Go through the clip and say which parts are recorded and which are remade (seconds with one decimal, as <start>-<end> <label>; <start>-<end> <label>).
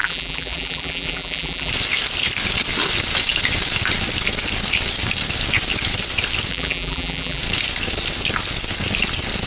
0.0-1.7 remade; 1.7-6.5 recorded; 6.5-7.4 remade; 7.4-9.5 recorded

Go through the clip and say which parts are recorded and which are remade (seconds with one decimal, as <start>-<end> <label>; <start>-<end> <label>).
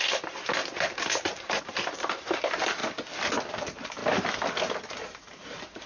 0.0-2.8 remade; 2.8-3.5 recorded; 3.5-4.0 remade; 4.0-4.9 recorded; 4.9-5.9 remade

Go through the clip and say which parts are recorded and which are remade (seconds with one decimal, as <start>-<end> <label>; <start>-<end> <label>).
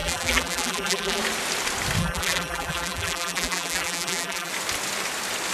0.0-1.2 remade; 1.2-2.0 recorded; 2.0-4.5 remade; 4.5-5.5 recorded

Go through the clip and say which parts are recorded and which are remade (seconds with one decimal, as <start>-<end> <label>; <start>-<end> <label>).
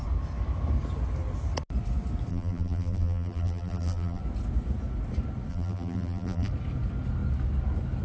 0.0-2.3 recorded; 2.3-4.2 remade; 4.2-5.5 recorded; 5.5-6.5 remade; 6.5-8.0 recorded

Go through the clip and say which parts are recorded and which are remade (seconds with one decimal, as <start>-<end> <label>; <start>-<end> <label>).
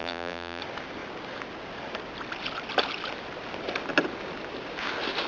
0.0-0.6 remade; 0.6-5.3 recorded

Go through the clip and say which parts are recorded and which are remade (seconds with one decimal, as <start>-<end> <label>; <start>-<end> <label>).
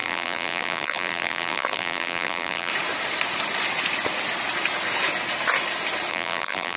0.0-2.7 remade; 2.7-6.1 recorded; 6.1-6.8 remade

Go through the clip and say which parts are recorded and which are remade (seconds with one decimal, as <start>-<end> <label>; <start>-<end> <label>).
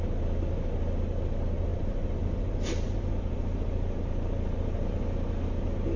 0.0-1.7 recorded; 1.7-5.0 remade; 5.0-6.0 recorded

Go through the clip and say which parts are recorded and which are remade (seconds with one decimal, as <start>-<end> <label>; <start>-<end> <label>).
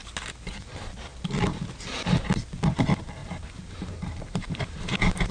0.0-3.2 recorded; 3.2-5.3 remade